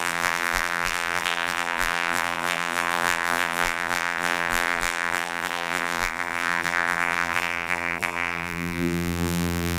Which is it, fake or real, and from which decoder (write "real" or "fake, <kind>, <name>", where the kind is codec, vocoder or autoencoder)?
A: fake, vocoder, BigVGAN v2